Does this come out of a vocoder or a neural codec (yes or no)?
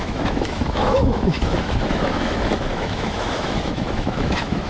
yes